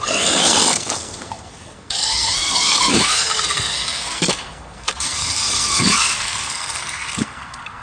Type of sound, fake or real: fake